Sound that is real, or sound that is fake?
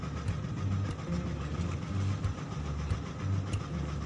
real